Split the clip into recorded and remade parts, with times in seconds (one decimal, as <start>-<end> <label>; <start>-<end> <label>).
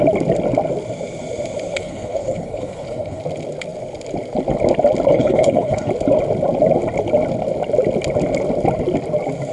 0.0-1.8 recorded; 1.8-3.2 remade; 3.2-5.1 recorded; 5.1-5.9 remade; 5.9-9.5 recorded